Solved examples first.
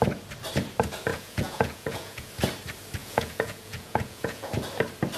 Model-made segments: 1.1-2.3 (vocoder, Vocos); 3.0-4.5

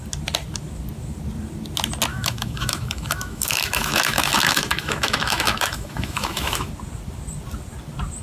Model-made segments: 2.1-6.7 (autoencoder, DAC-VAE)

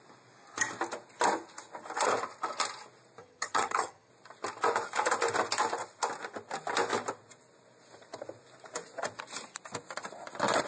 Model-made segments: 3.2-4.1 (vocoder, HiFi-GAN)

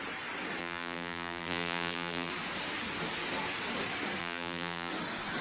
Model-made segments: 0.6-2.3 (vocoder, BigVGAN v2); 4.2-4.9

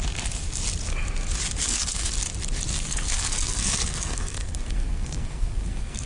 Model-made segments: 1.6-2.1 (codec, SNAC); 2.7-6.1

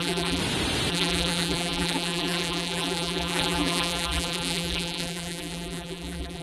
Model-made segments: 0.0-0.4 (vocoder, BigVGAN v2); 0.9-6.4

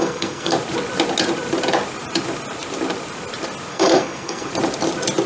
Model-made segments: 0.0-0.5 (codec, SNAC); 3.7-4.5

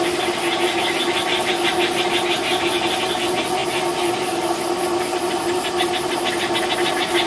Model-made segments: none